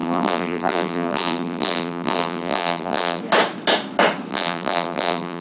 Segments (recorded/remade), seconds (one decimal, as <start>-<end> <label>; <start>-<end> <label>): 0.0-3.2 remade; 3.2-4.3 recorded; 4.3-5.4 remade